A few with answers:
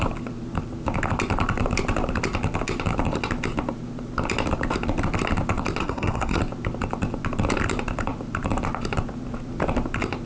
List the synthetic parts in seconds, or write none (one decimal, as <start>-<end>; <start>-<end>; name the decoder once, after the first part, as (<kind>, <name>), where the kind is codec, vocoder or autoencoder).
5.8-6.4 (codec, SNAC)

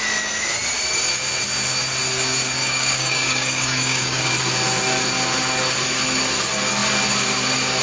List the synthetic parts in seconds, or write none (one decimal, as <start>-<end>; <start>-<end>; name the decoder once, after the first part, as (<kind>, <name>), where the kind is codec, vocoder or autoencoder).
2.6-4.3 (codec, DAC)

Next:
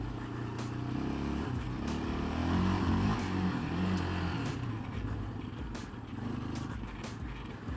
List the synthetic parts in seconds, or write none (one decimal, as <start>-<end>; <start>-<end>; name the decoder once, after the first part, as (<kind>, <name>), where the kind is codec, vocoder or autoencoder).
none

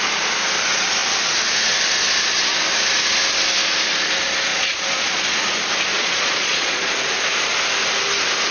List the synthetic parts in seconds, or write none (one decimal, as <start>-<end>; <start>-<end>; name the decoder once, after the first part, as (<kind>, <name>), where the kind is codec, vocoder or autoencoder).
4.5-5.4 (vocoder, Vocos); 5.9-6.9

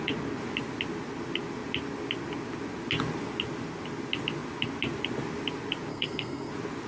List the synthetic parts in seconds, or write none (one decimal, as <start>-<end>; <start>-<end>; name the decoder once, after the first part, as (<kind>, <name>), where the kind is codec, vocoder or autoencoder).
5.9-6.5 (codec, SNAC)